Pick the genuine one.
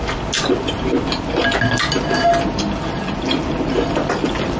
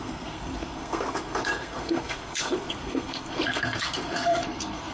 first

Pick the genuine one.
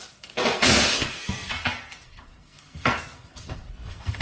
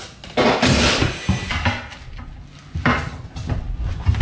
second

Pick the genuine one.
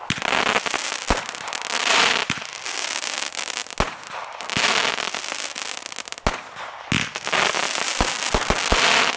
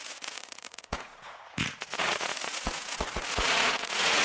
first